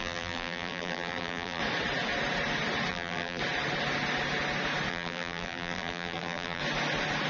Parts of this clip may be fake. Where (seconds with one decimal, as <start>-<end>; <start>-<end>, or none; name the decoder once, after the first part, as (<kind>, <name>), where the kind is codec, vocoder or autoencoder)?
0.0-1.6 (vocoder, BigVGAN v2); 2.9-3.4; 4.9-6.6